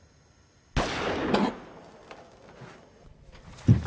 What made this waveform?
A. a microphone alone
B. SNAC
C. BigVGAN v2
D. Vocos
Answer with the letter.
A